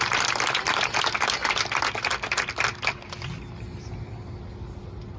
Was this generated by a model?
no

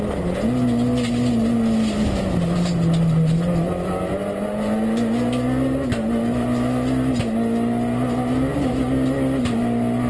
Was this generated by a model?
no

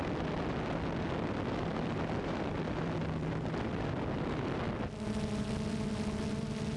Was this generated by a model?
no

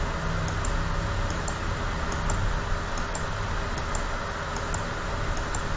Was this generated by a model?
no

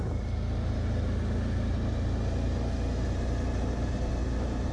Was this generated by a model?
no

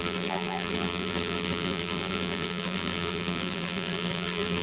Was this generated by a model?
yes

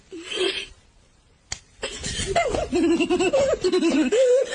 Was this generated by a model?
yes